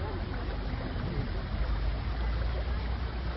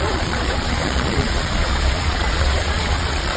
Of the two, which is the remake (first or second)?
second